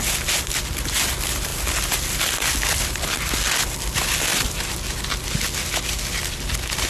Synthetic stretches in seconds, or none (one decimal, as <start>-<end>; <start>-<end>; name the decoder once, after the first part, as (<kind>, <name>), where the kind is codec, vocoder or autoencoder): none